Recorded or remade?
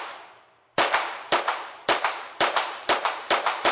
remade